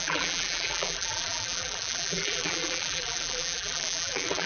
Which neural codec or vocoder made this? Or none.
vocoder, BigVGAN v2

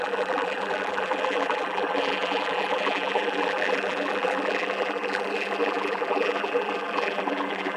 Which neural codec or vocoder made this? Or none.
vocoder, BigVGAN v2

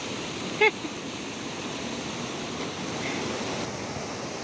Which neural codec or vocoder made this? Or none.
none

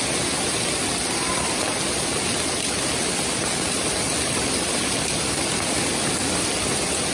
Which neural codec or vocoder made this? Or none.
none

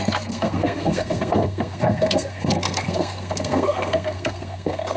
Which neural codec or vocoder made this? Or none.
codec, SNAC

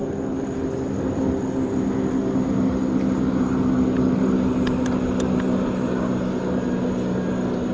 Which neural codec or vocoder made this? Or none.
none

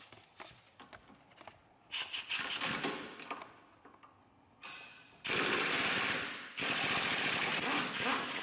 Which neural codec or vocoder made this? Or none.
none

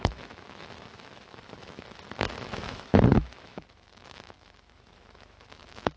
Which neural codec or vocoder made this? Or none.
autoencoder, DAC-VAE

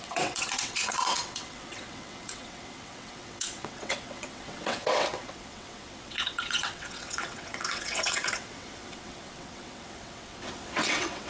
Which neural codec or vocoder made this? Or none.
vocoder, WaveNeXt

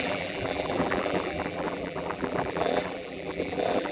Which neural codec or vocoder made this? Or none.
vocoder, BigVGAN v2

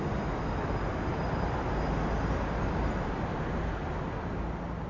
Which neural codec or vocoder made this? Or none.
none